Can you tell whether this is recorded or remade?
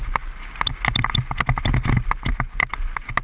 recorded